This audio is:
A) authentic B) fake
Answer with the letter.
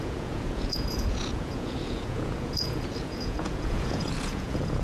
B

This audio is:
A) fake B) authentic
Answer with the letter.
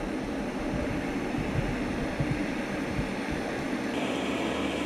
A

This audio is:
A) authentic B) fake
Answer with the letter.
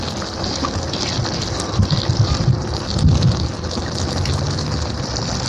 A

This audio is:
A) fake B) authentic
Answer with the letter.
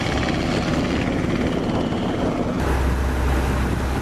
B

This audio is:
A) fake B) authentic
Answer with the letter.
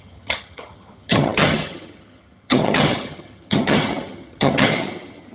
A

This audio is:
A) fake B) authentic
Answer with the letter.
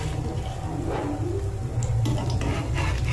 B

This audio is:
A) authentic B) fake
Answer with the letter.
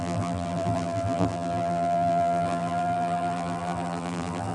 B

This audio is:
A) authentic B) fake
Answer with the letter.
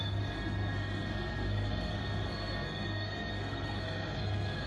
B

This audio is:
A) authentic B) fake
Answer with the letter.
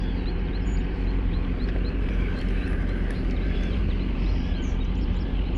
B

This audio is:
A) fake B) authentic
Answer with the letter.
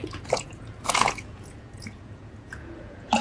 A